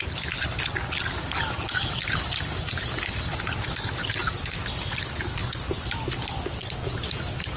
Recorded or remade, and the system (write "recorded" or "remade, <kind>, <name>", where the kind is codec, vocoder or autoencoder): recorded